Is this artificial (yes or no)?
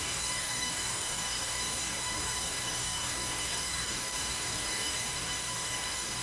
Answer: yes